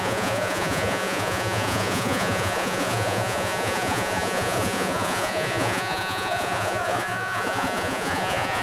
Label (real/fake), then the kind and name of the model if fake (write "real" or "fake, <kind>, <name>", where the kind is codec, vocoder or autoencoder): fake, vocoder, Vocos